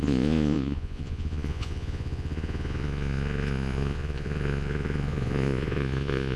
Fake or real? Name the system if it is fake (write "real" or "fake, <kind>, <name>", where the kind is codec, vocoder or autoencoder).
fake, vocoder, Vocos